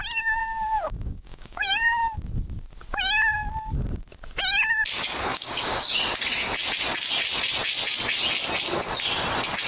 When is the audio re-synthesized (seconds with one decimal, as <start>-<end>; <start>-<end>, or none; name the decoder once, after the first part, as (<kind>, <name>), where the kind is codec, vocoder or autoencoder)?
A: 0.4-1.7 (codec, DAC); 5.3-6.0